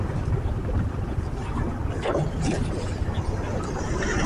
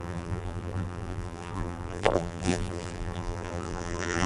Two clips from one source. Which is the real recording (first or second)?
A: first